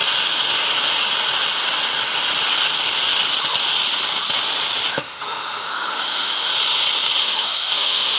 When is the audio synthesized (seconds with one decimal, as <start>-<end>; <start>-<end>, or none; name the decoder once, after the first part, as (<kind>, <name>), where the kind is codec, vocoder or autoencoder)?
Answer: 4.9-6.5 (autoencoder, DAC-VAE); 7.2-8.2